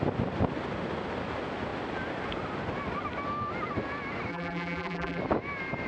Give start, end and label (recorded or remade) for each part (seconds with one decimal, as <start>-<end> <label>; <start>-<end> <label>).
0.0-4.3 recorded; 4.3-5.2 remade; 5.2-5.9 recorded